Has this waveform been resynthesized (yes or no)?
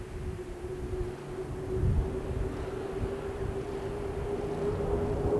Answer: no